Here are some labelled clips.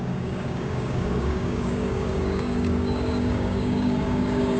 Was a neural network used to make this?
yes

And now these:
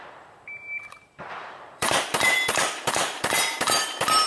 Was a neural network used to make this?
yes